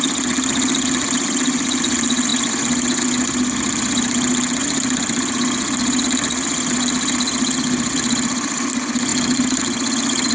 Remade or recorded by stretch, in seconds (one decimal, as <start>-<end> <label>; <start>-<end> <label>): 0.0-10.3 recorded